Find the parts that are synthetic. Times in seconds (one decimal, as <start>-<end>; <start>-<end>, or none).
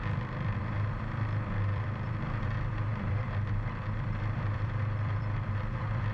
0.0-6.1